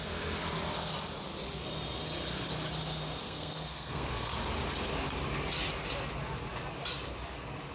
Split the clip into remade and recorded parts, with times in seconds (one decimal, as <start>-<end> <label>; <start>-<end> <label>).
0.0-3.2 recorded; 3.2-4.3 remade; 4.3-7.7 recorded